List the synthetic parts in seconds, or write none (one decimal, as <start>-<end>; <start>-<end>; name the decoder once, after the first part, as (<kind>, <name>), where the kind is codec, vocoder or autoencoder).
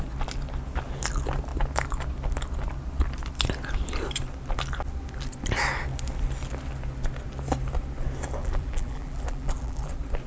8.4-9.9 (vocoder, BigVGAN v2)